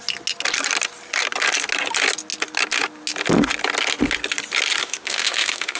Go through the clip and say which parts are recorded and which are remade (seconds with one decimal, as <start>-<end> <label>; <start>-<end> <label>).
0.0-4.8 recorded; 4.8-5.8 remade